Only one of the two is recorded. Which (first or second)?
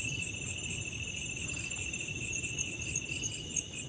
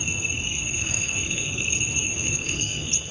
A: first